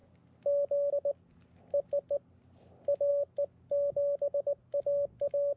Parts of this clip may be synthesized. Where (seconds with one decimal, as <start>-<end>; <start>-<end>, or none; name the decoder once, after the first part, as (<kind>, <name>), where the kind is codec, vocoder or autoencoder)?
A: none